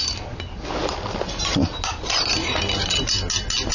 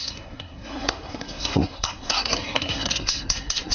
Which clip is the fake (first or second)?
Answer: second